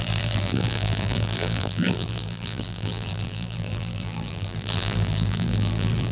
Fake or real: fake